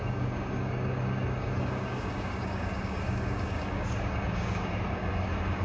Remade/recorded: remade